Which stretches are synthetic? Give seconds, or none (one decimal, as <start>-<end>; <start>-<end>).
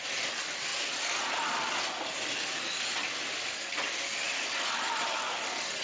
0.7-1.8